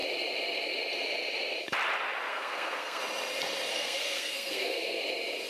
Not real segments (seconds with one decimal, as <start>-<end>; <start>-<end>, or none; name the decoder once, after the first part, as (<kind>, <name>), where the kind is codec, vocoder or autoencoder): 2.3-3.0 (codec, SNAC); 3.7-5.0